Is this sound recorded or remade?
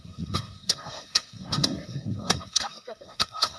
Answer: remade